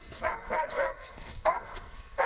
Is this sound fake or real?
fake